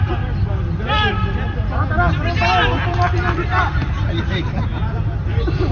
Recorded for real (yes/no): yes